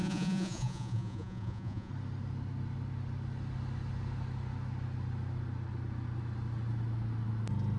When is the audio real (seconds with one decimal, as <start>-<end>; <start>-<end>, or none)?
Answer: 1.9-7.8